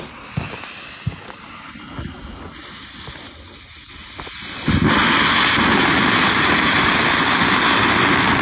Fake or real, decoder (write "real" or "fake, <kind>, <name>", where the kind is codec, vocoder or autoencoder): real